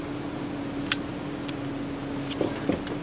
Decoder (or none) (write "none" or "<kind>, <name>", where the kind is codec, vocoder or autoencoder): none